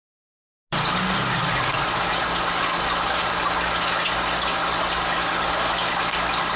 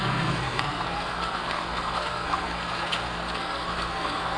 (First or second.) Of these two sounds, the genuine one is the first